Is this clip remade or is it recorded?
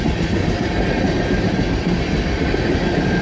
recorded